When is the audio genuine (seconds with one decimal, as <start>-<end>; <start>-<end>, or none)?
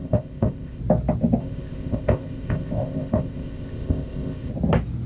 0.8-1.4; 4.5-5.1